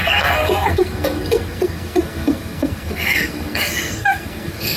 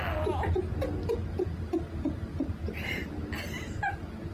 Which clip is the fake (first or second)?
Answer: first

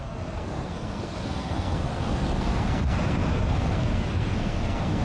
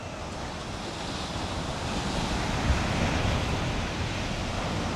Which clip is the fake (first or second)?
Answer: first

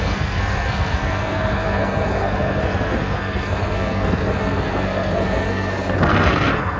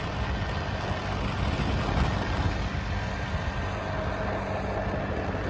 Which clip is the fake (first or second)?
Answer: first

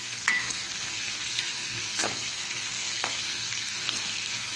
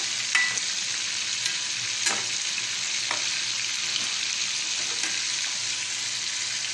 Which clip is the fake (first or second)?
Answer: first